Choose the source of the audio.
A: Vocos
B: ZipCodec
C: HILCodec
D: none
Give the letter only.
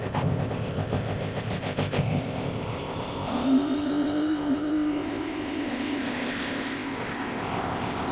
B